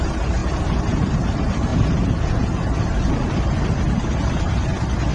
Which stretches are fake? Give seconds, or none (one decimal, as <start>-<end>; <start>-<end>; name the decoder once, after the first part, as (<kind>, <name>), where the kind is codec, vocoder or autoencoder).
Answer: none

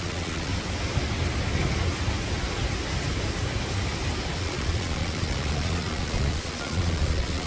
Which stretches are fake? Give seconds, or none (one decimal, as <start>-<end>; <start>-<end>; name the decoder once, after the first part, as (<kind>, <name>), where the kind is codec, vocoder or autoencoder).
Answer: 0.0-0.5 (vocoder, Vocos); 4.4-7.5

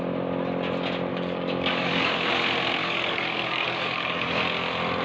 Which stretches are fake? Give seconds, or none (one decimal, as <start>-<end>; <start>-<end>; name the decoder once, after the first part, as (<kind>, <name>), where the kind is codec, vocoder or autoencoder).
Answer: 1.1-2.1 (codec, DAC); 2.8-4.4

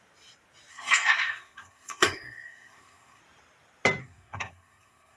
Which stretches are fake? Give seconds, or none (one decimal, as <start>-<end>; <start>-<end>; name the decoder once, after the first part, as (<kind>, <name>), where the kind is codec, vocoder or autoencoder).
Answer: 0.7-3.2 (codec, SNAC); 4.0-5.2

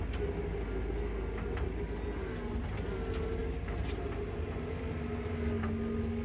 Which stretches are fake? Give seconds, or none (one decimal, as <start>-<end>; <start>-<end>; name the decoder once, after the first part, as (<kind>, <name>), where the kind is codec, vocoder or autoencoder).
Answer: none

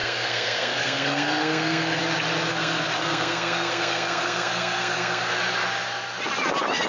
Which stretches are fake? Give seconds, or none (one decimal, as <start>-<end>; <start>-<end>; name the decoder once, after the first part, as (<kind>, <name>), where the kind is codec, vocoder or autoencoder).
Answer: 0.0-2.0 (codec, SNAC); 2.5-5.3